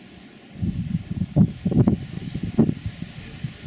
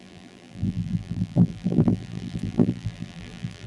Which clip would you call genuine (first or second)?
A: first